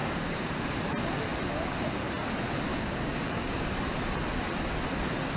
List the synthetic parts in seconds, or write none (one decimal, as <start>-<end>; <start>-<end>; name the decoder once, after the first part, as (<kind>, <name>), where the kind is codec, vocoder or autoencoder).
0.0-0.5 (codec, DAC); 2.7-3.7